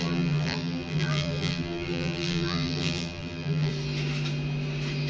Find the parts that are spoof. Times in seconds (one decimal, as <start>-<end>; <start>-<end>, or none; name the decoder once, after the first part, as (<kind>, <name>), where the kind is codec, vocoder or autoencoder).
0.0-3.7 (vocoder, BigVGAN v2)